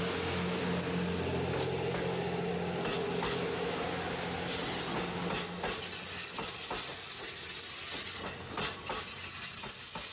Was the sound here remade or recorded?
recorded